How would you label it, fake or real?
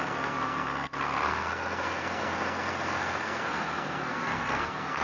fake